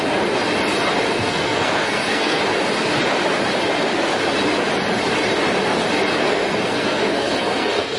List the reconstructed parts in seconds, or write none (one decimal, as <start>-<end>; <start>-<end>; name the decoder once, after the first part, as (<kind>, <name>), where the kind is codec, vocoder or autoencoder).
1.1-2.4 (codec, SNAC); 6.2-8.0